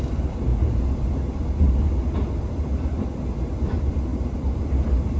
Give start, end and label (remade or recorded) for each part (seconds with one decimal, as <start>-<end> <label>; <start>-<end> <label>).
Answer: 0.0-4.1 recorded; 4.1-4.6 remade; 4.6-5.2 recorded